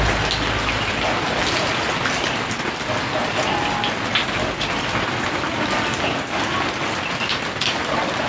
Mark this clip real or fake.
real